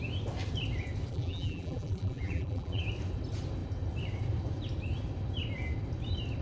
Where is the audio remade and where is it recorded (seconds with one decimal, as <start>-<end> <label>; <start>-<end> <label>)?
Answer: 0.0-1.1 recorded; 1.1-2.8 remade; 2.8-6.4 recorded